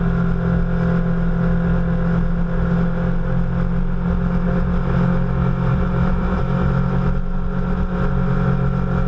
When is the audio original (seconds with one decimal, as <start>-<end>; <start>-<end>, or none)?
0.0-5.7; 6.4-9.1

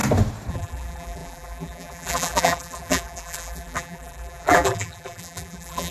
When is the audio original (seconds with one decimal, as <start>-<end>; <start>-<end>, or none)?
0.0-0.5

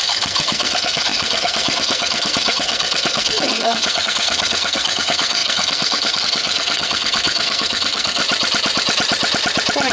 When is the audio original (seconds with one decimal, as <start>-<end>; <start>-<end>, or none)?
8.2-9.9

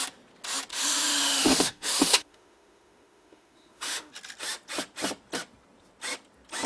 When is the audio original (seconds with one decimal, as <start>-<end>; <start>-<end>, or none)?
0.0-0.7; 4.1-6.7

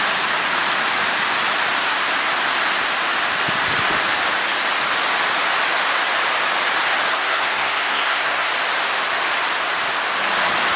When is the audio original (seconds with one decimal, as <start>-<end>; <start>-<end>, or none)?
0.0-7.1; 8.5-10.8

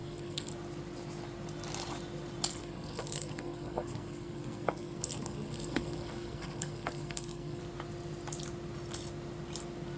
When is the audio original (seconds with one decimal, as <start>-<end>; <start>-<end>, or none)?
0.5-2.6; 7.6-10.0

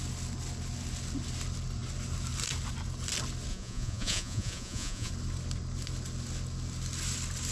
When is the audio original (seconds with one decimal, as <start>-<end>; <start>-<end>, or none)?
0.0-3.5; 5.1-7.5